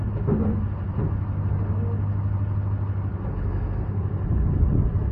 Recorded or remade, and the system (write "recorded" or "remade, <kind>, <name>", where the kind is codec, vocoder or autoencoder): recorded